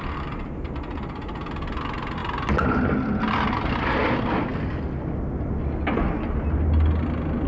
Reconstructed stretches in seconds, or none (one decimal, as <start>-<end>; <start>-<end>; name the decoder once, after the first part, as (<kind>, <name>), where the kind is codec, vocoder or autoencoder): none